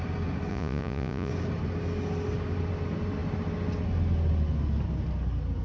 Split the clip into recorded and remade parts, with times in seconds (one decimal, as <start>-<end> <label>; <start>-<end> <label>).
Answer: 0.0-0.5 recorded; 0.5-1.3 remade; 1.3-5.6 recorded